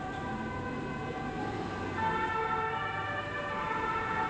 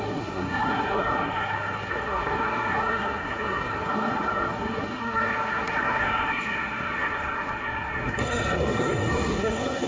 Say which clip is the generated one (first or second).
second